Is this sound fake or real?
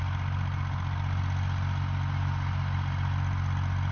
real